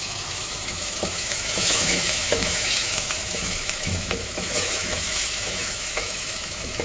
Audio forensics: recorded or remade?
remade